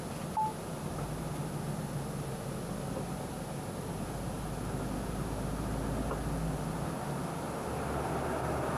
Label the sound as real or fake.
real